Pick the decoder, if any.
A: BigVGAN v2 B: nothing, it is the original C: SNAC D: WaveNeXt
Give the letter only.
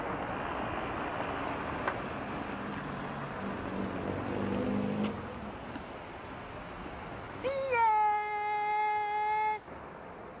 B